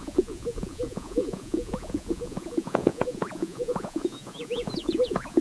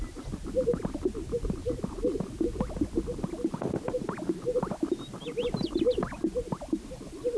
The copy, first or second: first